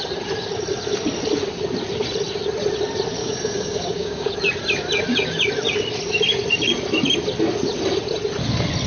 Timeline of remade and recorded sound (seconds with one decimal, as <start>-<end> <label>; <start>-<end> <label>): 0.0-3.2 recorded; 3.2-4.3 remade; 4.3-8.9 recorded